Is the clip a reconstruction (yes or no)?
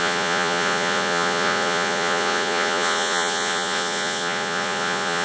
yes